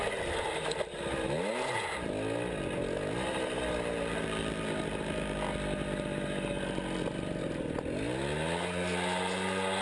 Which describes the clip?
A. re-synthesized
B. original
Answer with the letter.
B